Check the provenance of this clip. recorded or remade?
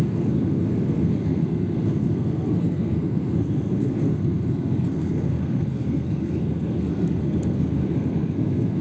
remade